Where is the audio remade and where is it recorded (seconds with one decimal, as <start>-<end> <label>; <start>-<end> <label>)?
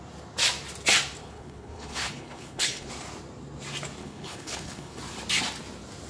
0.0-1.2 recorded; 1.2-2.9 remade; 2.9-4.0 recorded; 4.0-5.0 remade; 5.0-6.1 recorded